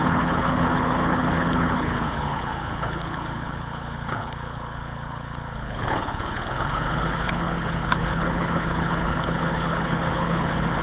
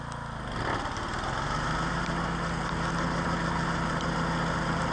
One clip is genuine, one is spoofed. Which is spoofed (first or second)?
first